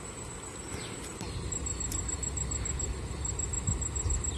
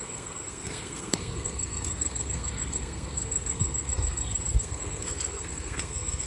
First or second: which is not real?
second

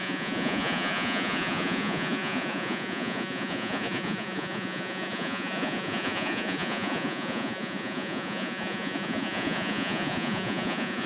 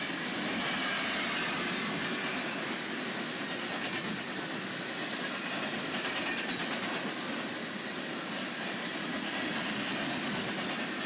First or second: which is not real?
first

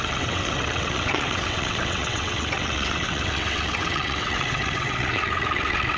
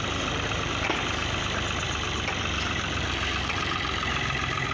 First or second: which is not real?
first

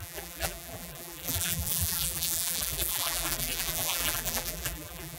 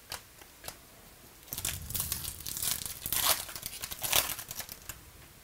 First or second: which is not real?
first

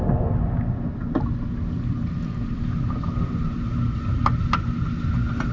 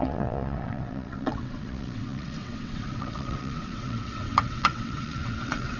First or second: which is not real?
second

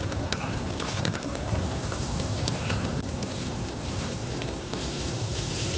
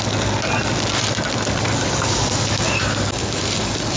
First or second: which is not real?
first